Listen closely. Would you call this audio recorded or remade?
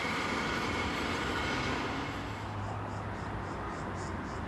recorded